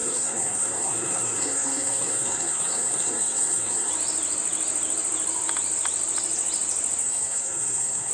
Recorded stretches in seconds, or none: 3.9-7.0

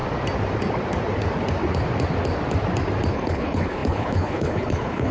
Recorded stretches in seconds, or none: 0.0-3.1

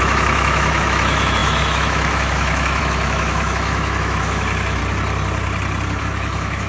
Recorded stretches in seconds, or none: 4.8-6.0

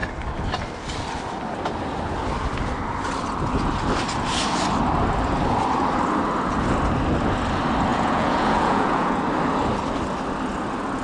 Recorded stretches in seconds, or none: 0.0-7.9; 9.2-11.0